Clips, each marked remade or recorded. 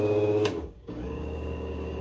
remade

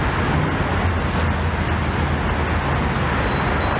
recorded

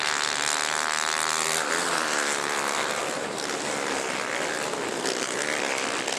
recorded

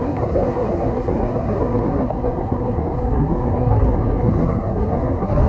remade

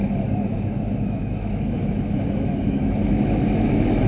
remade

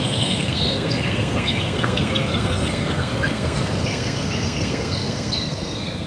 remade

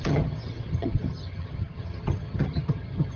remade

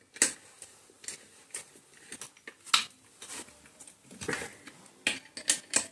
recorded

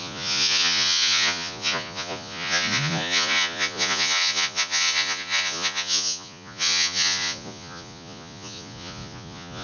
remade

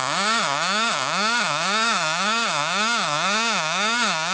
remade